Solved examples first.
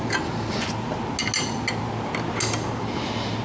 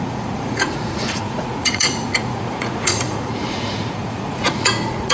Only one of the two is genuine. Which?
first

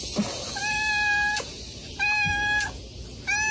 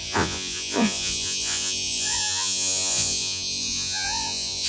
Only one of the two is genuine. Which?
first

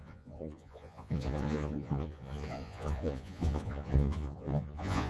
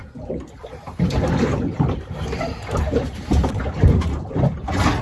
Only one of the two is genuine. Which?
second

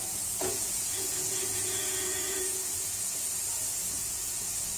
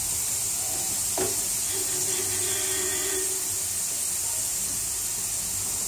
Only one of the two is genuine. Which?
second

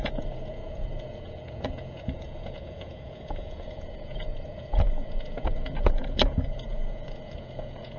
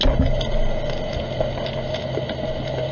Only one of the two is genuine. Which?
second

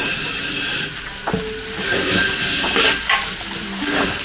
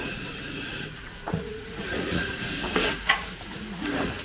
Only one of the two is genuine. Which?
first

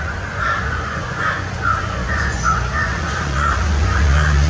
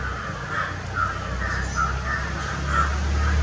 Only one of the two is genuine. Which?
second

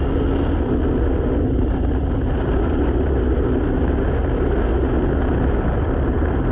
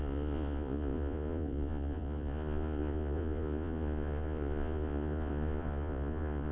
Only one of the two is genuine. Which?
first